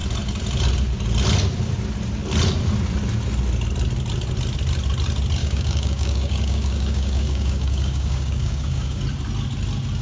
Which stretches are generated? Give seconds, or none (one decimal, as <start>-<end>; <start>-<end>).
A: 5.4-9.0

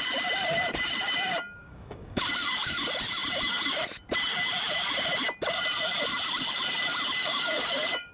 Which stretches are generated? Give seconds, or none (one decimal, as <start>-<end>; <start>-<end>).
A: 1.6-2.2; 7.2-8.1

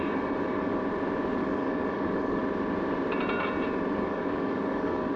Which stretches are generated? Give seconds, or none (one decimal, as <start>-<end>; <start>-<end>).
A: 0.0-0.8; 1.3-2.4; 4.0-5.2

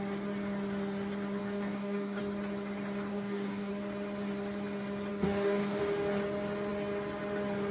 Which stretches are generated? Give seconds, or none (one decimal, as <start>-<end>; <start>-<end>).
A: 1.4-2.2; 3.1-3.7; 5.1-5.8

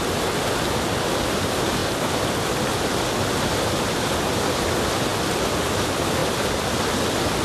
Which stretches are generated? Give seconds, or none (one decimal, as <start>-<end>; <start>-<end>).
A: none

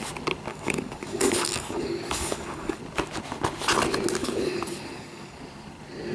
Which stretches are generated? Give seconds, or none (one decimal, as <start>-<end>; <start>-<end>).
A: 0.5-2.8; 4.2-5.4

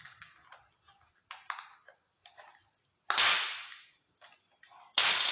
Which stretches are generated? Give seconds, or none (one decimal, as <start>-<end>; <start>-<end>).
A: none

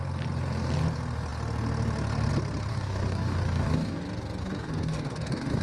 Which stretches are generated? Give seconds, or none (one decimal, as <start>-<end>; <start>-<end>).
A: 2.7-4.0; 4.4-5.6